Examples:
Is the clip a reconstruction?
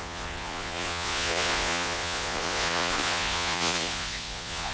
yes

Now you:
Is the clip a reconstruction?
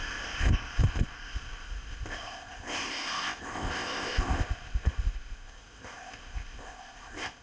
yes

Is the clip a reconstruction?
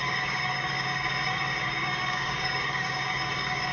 yes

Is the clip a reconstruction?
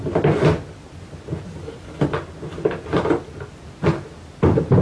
no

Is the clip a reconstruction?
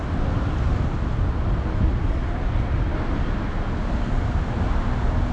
no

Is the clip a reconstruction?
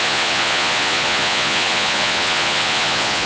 yes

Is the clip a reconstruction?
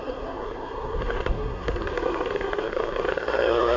yes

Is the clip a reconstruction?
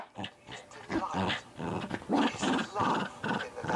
no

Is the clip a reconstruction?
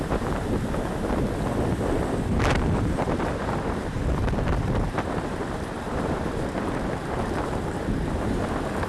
yes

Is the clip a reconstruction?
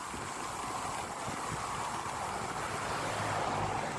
no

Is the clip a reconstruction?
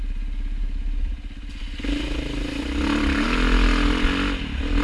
no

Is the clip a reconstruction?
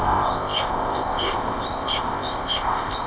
yes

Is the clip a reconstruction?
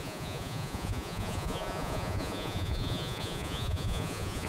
yes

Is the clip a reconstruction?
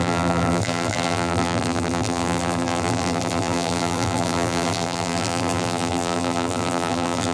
yes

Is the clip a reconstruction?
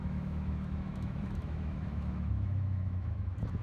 yes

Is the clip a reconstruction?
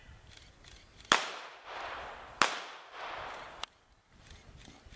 no